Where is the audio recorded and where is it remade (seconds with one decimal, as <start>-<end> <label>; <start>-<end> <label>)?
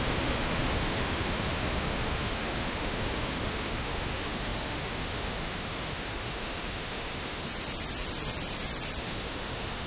0.0-7.5 remade; 7.5-9.0 recorded; 9.0-9.9 remade